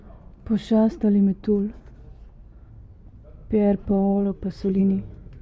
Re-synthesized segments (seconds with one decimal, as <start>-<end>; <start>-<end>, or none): 3.9-4.8